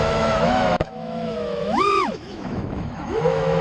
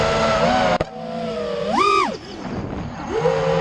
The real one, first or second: second